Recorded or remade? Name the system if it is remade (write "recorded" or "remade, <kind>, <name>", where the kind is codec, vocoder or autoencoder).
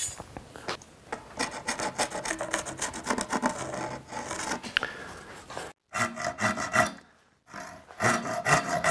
recorded